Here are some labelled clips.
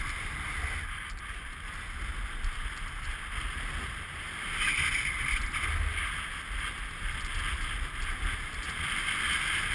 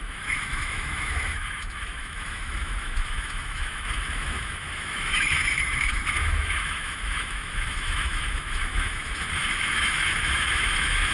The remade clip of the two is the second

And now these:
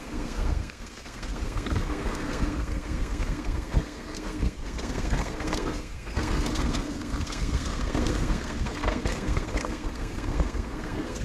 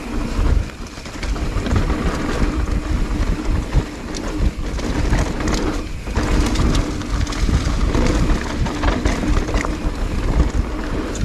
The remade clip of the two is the first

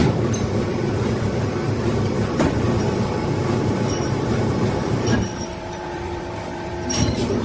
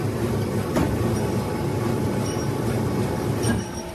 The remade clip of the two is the first